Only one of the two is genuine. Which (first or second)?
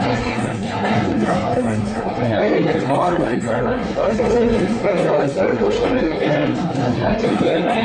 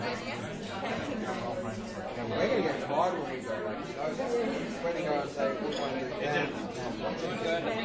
second